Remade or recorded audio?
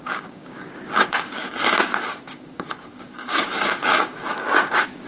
remade